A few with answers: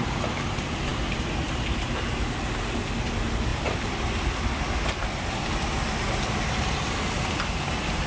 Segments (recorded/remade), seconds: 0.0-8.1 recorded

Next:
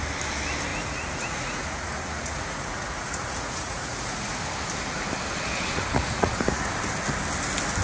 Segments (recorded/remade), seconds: 0.0-0.7 recorded; 0.7-4.3 remade; 4.3-5.5 recorded; 5.5-6.7 remade; 6.7-7.8 recorded

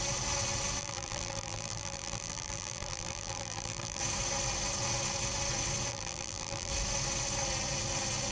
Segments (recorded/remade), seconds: 0.0-0.8 recorded; 0.8-4.0 remade; 4.0-5.9 recorded; 5.9-6.7 remade; 6.7-8.3 recorded

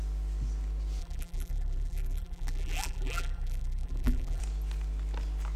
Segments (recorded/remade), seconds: 0.0-1.0 recorded; 1.0-4.4 remade; 4.4-5.6 recorded

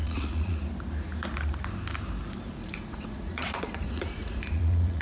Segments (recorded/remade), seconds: 0.0-0.6 remade; 0.6-2.6 recorded; 2.6-5.0 remade